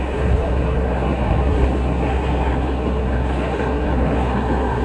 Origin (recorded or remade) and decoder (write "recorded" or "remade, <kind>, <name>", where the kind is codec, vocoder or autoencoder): remade, codec, SNAC